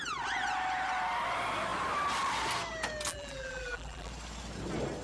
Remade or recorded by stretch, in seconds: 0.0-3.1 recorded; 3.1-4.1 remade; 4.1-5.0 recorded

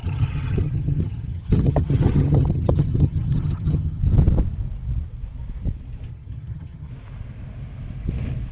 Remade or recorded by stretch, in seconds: 0.0-4.0 remade; 4.0-6.1 recorded; 6.1-6.9 remade; 6.9-8.5 recorded

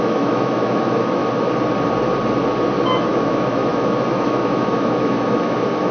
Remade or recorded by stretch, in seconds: 0.0-1.2 remade; 1.2-3.1 recorded; 3.1-5.9 remade

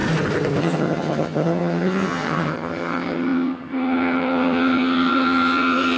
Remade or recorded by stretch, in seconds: 0.0-0.6 recorded; 0.6-6.0 remade

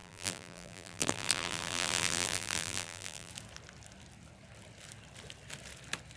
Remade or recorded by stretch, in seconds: 0.0-3.3 remade; 3.3-6.2 recorded